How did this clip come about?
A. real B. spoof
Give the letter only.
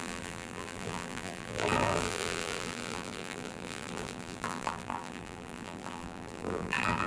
B